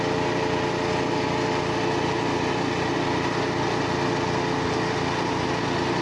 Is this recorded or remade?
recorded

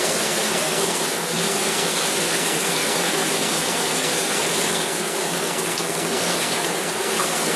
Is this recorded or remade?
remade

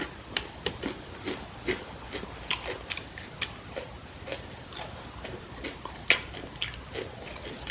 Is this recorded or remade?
recorded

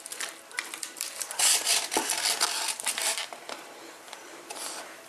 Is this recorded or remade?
remade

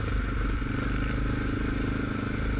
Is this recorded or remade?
recorded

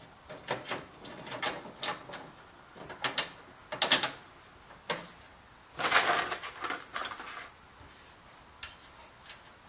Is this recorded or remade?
recorded